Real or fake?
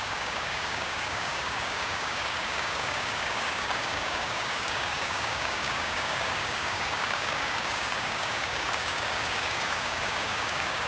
fake